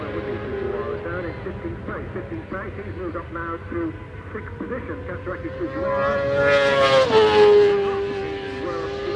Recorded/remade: recorded